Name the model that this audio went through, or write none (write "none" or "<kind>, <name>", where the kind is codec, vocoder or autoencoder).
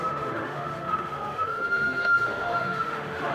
autoencoder, DAC-VAE